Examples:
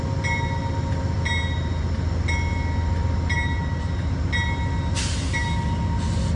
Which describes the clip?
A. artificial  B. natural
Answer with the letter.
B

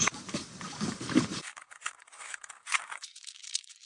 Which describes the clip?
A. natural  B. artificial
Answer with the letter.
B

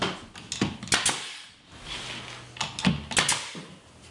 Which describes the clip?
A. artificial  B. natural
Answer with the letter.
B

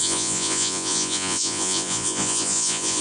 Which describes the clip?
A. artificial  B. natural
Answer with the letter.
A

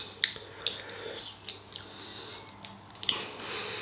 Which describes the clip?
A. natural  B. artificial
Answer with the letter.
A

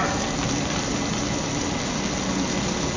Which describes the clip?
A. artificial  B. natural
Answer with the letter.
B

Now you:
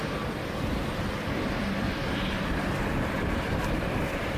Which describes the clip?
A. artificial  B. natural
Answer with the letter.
A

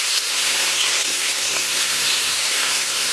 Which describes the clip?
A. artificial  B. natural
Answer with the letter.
A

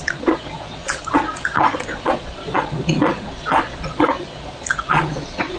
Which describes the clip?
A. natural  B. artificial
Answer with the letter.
B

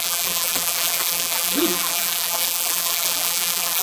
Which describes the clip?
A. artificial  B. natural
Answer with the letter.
A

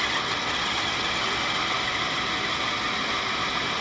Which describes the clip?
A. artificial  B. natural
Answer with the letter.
B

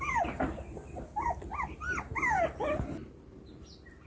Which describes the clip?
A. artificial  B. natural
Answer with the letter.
B